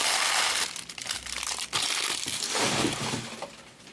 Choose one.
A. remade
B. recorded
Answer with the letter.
B